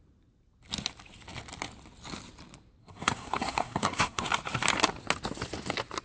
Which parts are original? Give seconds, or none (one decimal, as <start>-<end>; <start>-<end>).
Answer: 0.0-2.8; 4.3-6.0